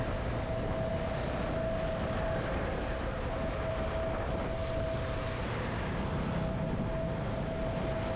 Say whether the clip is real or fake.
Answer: real